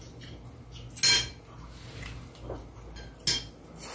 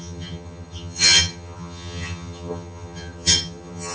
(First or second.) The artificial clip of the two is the second